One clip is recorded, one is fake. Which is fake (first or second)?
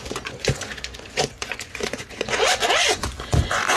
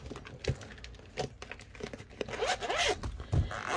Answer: first